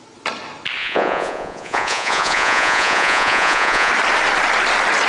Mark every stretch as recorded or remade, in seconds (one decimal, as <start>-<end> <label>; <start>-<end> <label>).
0.0-0.8 recorded; 0.8-3.9 remade; 3.9-5.1 recorded